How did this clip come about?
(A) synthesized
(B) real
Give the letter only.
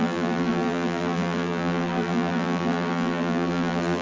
A